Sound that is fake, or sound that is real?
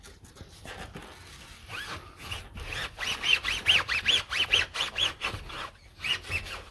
real